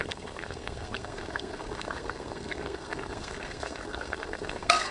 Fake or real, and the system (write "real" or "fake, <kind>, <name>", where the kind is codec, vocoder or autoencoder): fake, codec, SNAC